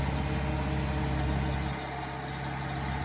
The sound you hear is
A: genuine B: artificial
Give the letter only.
A